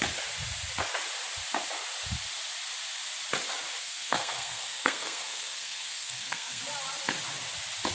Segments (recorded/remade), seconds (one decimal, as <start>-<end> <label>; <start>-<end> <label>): 0.0-3.8 recorded; 3.8-6.6 remade; 6.6-7.9 recorded